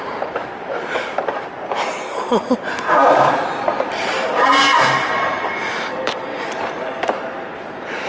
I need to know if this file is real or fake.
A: fake